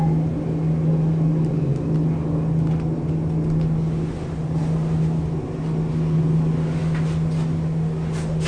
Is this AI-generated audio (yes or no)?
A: no